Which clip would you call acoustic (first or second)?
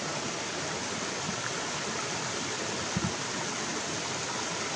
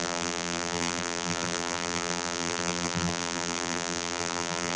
first